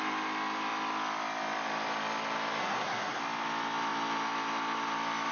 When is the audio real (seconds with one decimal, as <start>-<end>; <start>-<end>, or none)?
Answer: 0.0-2.6; 3.2-5.3